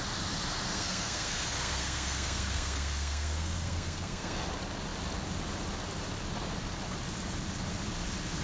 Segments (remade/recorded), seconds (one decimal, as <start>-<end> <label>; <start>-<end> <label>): 0.0-0.7 recorded; 0.7-4.5 remade; 4.5-8.4 recorded

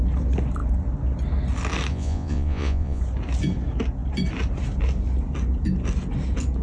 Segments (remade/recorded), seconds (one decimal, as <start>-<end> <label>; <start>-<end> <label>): 0.0-1.9 recorded; 1.9-3.0 remade; 3.0-6.6 recorded

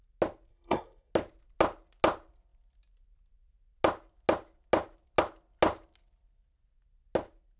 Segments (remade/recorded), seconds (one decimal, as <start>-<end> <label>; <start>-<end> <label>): 0.0-0.5 recorded; 0.5-1.1 remade; 1.1-7.6 recorded

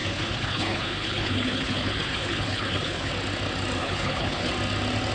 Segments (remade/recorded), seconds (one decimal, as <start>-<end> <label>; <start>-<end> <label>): 0.0-3.1 remade; 3.1-3.8 recorded; 3.8-4.5 remade; 4.5-5.1 recorded

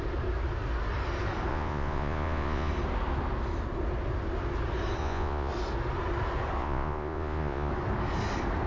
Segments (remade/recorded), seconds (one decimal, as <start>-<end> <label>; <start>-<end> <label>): 0.0-1.5 recorded; 1.5-2.7 remade; 2.7-5.0 recorded; 5.0-5.5 remade; 5.5-6.6 recorded; 6.6-7.7 remade; 7.7-8.7 recorded